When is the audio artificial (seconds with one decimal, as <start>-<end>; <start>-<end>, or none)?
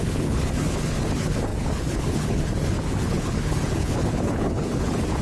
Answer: 0.0-5.2